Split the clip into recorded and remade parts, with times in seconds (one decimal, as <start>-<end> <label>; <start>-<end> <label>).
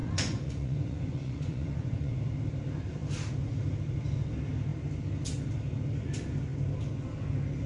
0.0-2.2 remade; 2.2-7.7 recorded